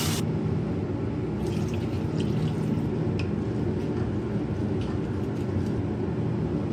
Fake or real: real